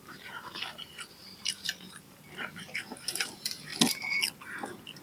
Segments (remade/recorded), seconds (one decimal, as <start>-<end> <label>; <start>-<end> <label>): 0.0-3.7 remade; 3.7-5.0 recorded